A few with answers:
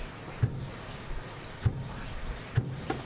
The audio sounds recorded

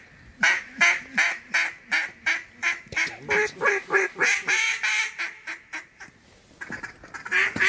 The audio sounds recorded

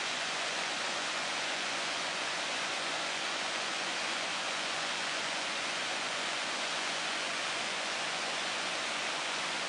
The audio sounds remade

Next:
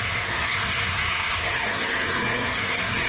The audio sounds remade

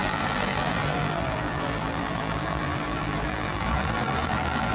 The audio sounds remade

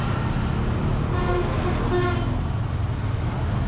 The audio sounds recorded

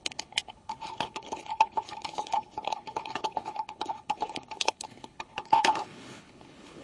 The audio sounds remade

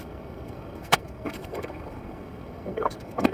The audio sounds remade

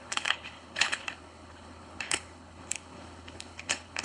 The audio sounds remade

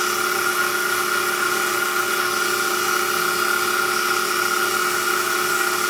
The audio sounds recorded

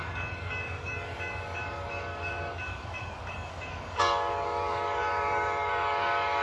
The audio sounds remade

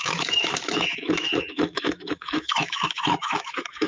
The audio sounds remade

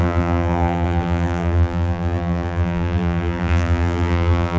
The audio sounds remade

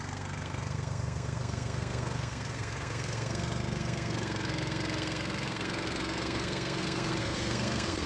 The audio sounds remade